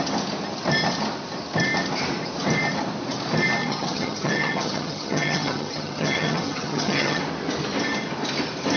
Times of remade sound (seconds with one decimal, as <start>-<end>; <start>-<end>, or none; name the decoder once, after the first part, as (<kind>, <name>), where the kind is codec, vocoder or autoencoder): 3.6-7.2 (vocoder, HiFi-GAN)

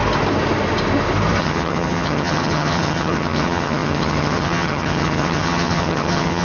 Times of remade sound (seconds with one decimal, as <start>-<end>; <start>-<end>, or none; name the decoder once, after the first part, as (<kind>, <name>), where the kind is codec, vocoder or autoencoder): 1.4-6.4 (vocoder, HiFi-GAN)

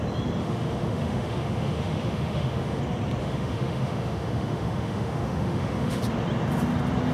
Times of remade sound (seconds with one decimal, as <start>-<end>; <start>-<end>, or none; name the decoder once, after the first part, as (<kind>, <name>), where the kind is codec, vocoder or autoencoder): 0.4-2.8 (autoencoder, DAC-VAE); 3.2-6.0

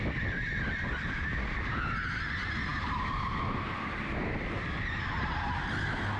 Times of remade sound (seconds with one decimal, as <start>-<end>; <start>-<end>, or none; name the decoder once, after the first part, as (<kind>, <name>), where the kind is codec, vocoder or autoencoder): none

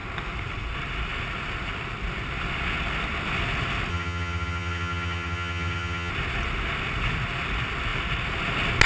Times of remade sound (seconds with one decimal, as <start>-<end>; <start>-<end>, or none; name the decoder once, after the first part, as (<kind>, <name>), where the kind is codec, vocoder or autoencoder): 3.9-6.1 (vocoder, HiFi-GAN)

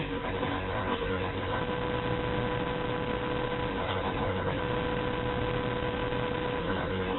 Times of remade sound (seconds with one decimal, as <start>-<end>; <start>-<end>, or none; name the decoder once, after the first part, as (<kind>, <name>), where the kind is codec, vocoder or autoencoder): 0.0-1.6 (codec, SNAC); 3.7-4.6; 6.6-7.2

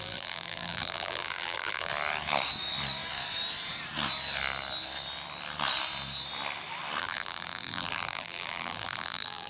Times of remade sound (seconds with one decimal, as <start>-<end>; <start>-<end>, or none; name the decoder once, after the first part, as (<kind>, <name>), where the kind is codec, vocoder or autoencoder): 0.0-1.9 (vocoder, BigVGAN v2); 7.0-9.5

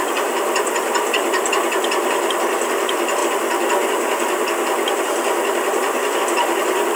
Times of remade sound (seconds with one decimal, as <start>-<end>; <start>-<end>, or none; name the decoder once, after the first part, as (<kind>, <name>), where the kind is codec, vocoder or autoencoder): none